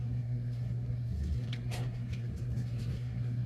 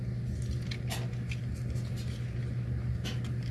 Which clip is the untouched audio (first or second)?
second